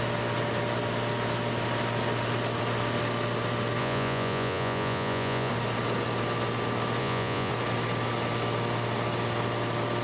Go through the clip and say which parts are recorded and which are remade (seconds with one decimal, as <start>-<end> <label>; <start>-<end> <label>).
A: 0.0-3.8 recorded; 3.8-5.5 remade; 5.5-7.0 recorded; 7.0-7.5 remade; 7.5-10.0 recorded